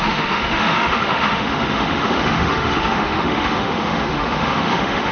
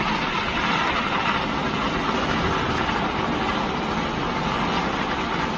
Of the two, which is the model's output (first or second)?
first